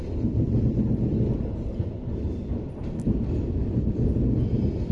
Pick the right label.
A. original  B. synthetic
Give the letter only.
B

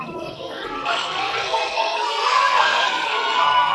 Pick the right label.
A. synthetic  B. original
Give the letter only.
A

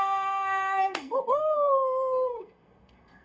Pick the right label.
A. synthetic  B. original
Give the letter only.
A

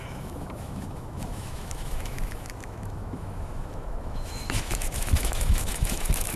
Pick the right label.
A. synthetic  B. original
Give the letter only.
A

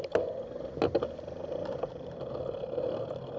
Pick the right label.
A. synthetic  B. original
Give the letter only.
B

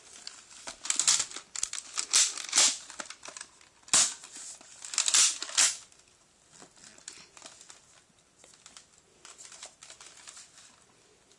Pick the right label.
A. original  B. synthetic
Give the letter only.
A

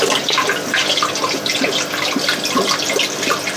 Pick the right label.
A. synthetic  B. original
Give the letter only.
B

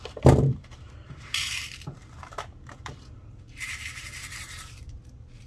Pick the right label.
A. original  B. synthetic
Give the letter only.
B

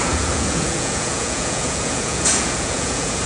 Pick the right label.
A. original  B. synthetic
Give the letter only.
B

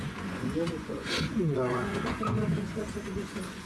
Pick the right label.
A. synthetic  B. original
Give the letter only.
A